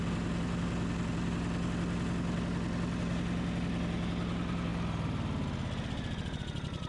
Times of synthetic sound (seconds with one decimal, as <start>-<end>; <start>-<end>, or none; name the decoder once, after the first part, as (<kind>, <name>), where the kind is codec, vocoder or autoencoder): none